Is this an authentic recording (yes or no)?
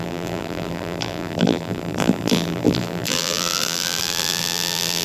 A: no